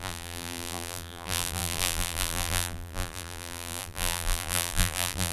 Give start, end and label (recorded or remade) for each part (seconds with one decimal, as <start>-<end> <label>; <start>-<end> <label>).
0.0-5.3 remade